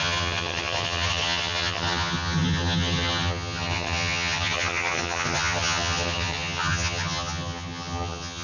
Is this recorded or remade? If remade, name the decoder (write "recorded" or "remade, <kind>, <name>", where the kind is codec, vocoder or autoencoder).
remade, vocoder, HiFi-GAN